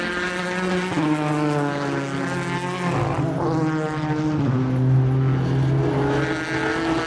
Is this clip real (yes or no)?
yes